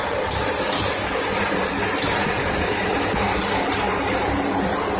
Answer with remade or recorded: recorded